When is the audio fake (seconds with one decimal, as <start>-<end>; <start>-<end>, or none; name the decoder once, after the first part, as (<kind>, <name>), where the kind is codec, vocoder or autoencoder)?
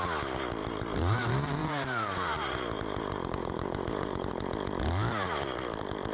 0.6-4.3 (vocoder, BigVGAN v2)